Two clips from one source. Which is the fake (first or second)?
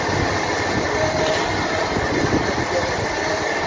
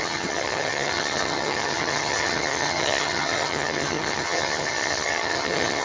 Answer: second